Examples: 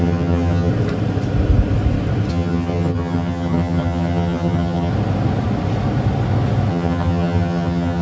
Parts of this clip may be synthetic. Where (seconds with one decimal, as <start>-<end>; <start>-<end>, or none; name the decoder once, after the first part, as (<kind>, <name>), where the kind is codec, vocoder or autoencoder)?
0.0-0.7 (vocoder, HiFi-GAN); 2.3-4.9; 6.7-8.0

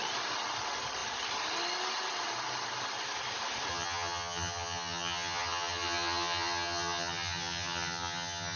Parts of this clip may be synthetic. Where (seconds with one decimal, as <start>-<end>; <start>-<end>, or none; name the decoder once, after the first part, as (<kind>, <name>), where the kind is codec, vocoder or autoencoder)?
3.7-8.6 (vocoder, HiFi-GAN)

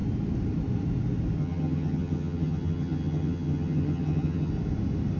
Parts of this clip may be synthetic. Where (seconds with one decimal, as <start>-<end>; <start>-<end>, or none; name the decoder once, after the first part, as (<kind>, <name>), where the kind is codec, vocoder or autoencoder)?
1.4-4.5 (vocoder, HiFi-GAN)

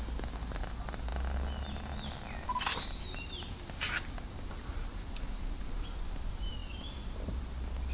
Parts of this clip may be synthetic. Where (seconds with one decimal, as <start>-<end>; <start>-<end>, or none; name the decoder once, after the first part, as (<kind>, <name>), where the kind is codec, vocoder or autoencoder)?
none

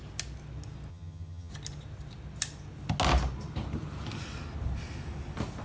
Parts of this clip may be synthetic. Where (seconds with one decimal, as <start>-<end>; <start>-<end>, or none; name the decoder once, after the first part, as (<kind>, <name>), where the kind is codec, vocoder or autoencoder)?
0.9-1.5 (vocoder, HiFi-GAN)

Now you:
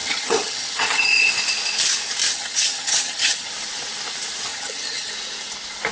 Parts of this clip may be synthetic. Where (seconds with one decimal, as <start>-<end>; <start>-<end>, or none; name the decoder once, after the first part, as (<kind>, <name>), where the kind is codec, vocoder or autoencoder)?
0.0-1.3 (vocoder, HiFi-GAN); 2.3-3.5; 4.5-5.1